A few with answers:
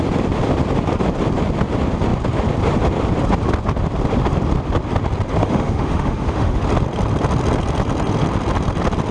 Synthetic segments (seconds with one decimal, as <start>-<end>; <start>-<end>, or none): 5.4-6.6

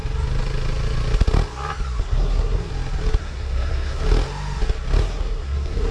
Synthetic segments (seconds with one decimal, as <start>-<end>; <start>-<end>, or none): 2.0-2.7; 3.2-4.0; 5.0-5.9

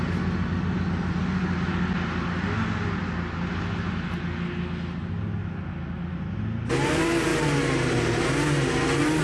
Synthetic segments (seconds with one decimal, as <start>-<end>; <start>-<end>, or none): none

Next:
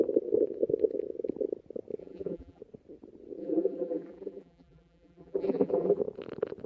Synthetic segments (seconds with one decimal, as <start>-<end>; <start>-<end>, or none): 2.0-2.6; 3.4-6.0

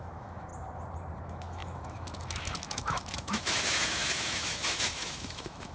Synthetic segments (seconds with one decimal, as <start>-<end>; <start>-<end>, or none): 0.0-0.5; 1.2-5.7

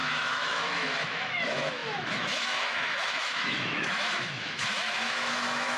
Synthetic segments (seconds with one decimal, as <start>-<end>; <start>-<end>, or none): 0.0-5.8

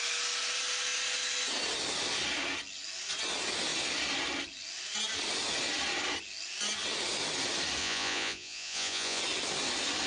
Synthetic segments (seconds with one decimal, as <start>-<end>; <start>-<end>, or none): 7.8-9.2